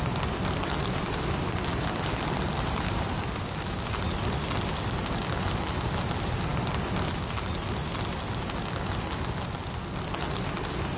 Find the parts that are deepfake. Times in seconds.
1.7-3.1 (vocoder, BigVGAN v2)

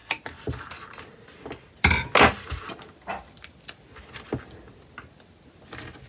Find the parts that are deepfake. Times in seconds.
none

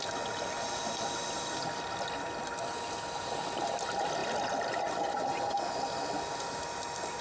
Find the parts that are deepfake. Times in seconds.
none

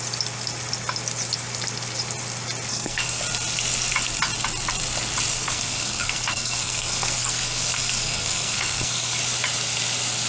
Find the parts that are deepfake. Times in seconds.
2.7-3.2 (codec, SNAC); 5.3-9.2

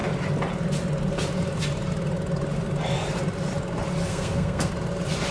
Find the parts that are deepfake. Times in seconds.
4.1-4.7 (codec, SNAC)

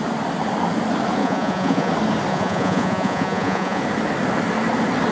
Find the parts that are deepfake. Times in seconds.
1.2-1.9 (vocoder, Vocos); 2.3-3.8

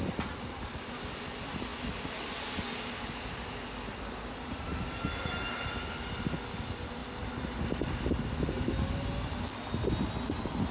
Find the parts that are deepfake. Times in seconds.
none

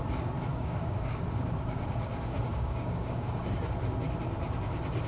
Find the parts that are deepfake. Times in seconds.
0.5-3.4 (codec, DAC)